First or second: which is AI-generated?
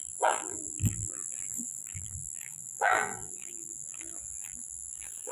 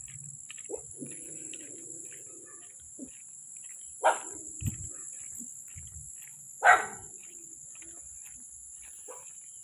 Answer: first